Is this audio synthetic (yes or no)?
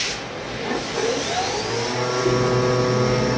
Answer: no